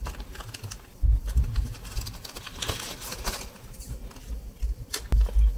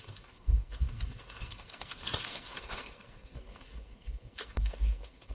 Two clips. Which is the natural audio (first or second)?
first